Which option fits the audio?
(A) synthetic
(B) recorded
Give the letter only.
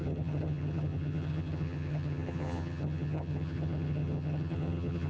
A